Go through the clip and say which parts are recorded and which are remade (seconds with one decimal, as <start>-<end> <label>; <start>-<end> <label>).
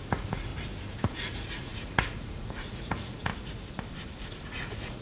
0.0-0.5 remade; 0.5-1.0 recorded; 1.0-3.3 remade; 3.3-4.3 recorded; 4.3-5.0 remade